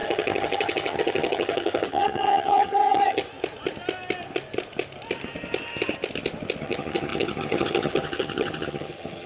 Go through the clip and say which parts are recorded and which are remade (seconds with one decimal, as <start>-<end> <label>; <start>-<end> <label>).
0.0-3.2 remade; 3.2-6.6 recorded; 6.6-9.3 remade